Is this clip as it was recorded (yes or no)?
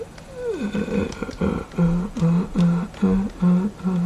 yes